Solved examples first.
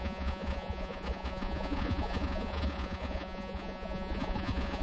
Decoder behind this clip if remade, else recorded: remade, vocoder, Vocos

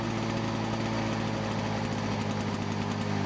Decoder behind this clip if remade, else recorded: recorded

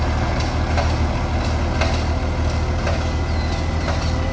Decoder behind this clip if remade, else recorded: recorded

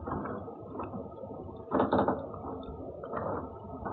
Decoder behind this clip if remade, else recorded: recorded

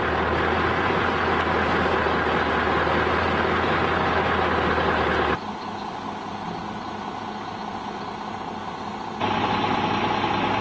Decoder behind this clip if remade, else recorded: recorded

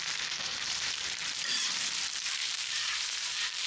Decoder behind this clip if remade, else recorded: remade, vocoder, BigVGAN v2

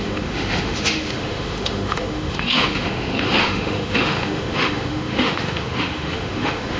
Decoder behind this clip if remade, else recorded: remade, autoencoder, DAC-VAE